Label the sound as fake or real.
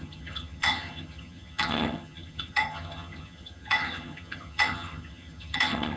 fake